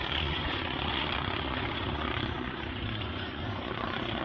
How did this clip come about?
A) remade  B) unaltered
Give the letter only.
A